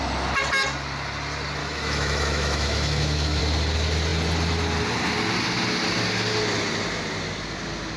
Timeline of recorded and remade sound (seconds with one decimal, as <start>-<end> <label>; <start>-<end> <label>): 0.0-1.6 recorded; 1.6-3.4 remade; 3.4-8.0 recorded